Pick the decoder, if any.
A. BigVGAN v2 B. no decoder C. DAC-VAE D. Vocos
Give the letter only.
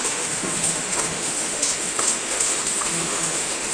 C